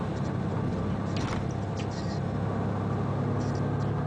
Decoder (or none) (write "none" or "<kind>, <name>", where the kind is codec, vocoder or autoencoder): none